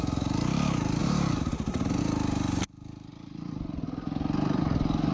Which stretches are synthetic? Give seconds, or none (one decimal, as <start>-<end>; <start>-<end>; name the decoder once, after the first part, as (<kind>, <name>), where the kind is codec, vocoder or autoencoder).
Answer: 1.0-2.0 (vocoder, BigVGAN v2); 3.1-4.6

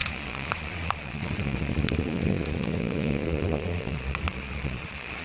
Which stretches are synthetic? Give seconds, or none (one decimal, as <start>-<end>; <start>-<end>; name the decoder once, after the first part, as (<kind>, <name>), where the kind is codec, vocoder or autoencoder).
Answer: 0.0-5.2 (vocoder, Vocos)

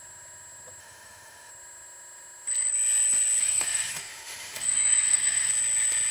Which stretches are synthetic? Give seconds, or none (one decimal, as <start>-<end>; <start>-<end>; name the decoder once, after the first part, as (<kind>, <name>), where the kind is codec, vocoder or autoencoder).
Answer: 0.8-1.5 (autoencoder, DAC-VAE); 3.4-5.5

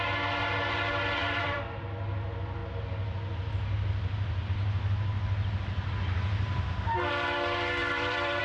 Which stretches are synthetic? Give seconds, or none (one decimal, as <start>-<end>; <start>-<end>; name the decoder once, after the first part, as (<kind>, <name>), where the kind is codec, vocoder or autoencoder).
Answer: 1.2-1.8 (vocoder, BigVGAN v2); 7.8-8.4

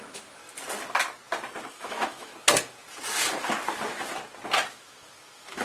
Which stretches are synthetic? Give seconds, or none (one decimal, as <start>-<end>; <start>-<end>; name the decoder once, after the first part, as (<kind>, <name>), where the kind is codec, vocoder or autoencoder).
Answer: 0.0-0.4 (autoencoder, DAC-VAE); 1.7-2.3; 4.7-5.6